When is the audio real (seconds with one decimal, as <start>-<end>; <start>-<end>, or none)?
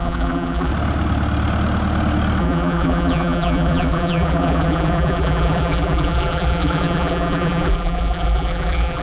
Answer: 0.7-2.4